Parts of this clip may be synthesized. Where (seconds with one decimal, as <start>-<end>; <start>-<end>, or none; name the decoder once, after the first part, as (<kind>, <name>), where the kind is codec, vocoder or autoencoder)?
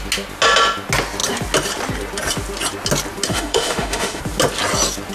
3.3-4.2 (autoencoder, DAC-VAE)